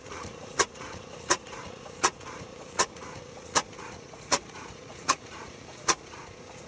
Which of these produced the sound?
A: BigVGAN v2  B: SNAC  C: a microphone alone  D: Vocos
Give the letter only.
D